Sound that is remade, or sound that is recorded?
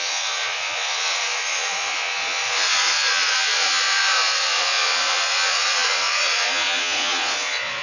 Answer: remade